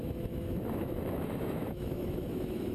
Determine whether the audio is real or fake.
fake